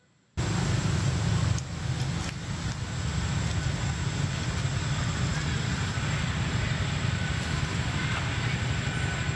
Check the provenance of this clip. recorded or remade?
recorded